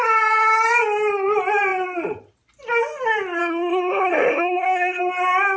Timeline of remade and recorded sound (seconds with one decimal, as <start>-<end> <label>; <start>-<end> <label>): 0.0-3.4 recorded; 3.4-5.0 remade; 5.0-5.6 recorded